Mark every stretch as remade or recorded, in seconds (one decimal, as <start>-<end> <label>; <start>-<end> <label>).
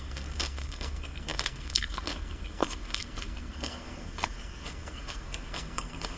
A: 0.0-6.2 remade